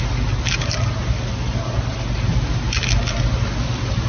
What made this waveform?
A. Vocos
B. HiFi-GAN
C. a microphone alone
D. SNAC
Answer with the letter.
C